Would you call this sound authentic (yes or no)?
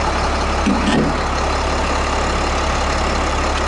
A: yes